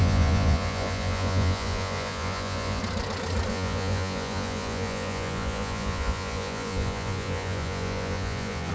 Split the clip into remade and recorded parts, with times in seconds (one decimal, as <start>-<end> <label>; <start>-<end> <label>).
0.0-2.8 remade; 2.8-3.5 recorded; 3.5-8.7 remade